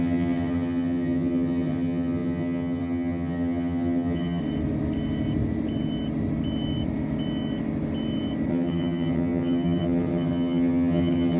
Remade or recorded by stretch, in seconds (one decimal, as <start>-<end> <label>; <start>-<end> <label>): 0.0-4.4 remade; 4.4-8.5 recorded; 8.5-11.4 remade